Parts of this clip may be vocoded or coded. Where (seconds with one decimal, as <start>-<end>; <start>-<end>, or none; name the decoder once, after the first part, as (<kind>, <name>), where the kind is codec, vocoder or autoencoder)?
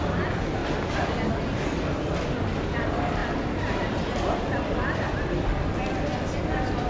none